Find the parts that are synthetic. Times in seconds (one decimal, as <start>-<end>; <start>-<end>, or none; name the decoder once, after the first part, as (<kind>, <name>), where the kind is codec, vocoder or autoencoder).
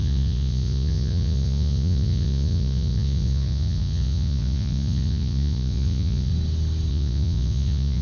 0.0-6.3 (vocoder, Vocos); 6.9-8.0